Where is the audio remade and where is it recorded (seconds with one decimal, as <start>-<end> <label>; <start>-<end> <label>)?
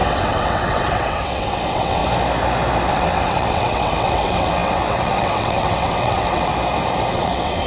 0.0-2.0 remade; 2.0-2.9 recorded; 2.9-6.5 remade; 6.5-7.1 recorded; 7.1-7.7 remade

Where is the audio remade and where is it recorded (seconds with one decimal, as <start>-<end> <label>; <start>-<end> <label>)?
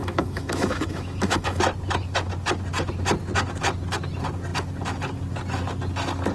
0.0-1.6 remade; 1.6-6.3 recorded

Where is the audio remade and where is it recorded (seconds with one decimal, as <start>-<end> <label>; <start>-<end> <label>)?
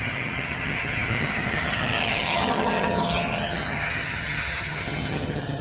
0.0-5.6 remade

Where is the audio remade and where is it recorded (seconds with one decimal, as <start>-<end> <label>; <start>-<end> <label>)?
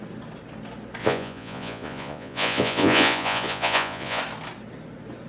0.0-1.0 recorded; 1.0-4.2 remade; 4.2-5.3 recorded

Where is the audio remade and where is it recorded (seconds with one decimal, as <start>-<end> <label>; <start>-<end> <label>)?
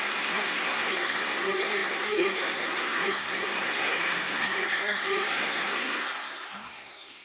0.0-7.2 remade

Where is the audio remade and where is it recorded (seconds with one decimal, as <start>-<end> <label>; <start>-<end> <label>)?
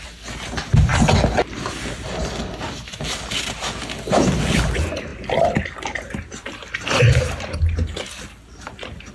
0.0-9.1 recorded